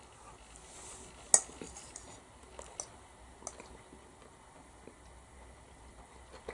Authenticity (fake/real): real